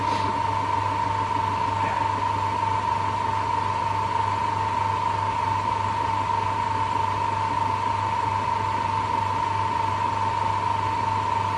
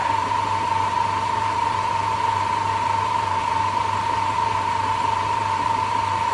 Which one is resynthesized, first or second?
second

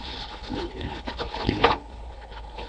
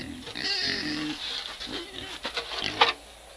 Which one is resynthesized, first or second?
first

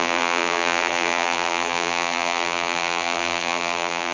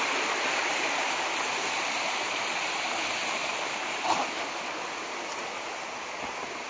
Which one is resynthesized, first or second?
first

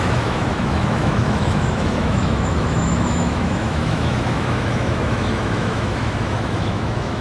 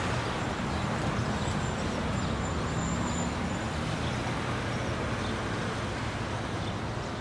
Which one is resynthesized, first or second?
first